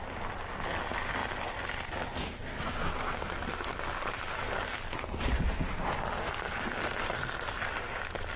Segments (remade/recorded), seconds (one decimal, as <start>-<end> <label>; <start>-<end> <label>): 0.0-8.4 recorded